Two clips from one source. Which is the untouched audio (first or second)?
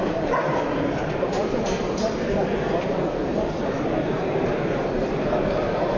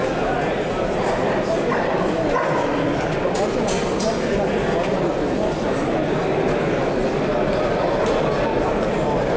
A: second